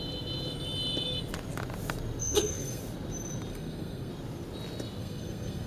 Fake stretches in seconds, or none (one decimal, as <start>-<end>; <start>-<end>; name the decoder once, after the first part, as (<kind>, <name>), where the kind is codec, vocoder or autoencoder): 2.2-2.8 (codec, SNAC); 3.5-4.1; 5.0-5.7